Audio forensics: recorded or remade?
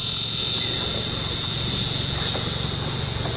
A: recorded